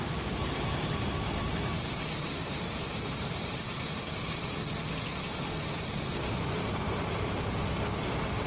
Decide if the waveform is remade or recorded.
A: remade